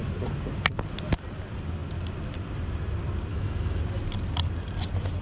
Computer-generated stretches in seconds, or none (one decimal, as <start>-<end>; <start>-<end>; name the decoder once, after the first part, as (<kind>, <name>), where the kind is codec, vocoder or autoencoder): 3.3-3.8 (autoencoder, DAC-VAE)